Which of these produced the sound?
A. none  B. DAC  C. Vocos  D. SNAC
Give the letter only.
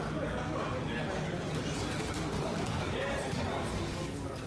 A